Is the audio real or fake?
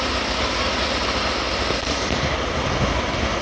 real